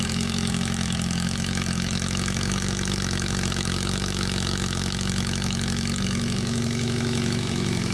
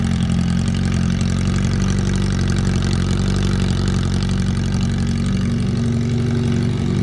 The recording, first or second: second